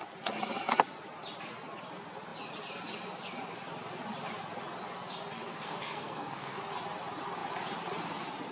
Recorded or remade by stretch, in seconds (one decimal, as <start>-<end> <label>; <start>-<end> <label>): 0.0-5.5 recorded; 5.5-6.6 remade; 6.6-8.5 recorded